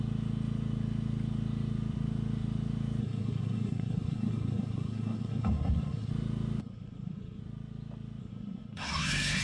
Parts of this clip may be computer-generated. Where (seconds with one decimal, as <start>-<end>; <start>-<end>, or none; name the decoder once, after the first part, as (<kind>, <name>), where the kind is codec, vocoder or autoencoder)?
3.0-6.1 (codec, SNAC); 6.6-7.4; 8.2-9.4